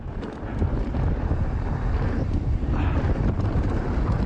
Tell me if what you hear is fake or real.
real